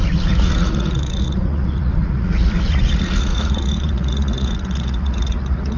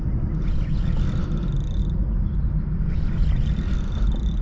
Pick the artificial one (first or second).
first